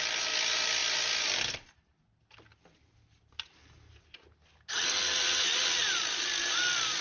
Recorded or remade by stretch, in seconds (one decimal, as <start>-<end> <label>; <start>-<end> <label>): 0.0-7.0 recorded